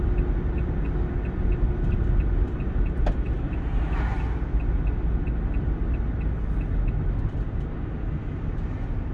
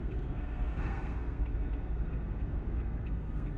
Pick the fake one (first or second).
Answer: second